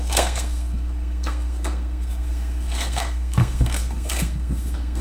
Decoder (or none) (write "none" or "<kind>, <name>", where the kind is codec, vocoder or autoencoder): codec, SNAC